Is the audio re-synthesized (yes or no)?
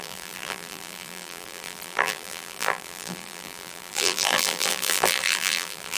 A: yes